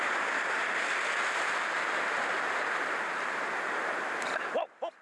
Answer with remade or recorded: recorded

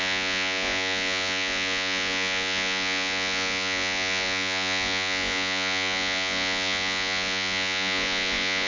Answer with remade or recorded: remade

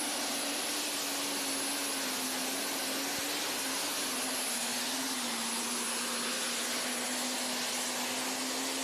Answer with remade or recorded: recorded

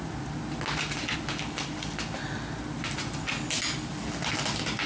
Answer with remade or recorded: recorded